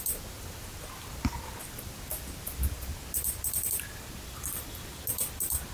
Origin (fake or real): real